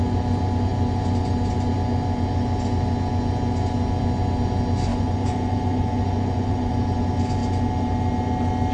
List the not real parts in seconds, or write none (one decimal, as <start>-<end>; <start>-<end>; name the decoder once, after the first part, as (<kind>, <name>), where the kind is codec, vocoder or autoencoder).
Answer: 4.9-6.7 (vocoder, Vocos)